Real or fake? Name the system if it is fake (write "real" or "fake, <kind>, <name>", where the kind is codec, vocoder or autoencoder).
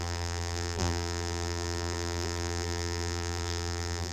fake, vocoder, BigVGAN v2